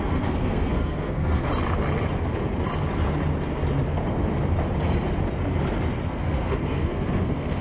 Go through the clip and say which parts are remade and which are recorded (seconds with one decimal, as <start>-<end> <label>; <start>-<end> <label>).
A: 0.0-1.5 remade; 1.5-6.1 recorded; 6.1-7.6 remade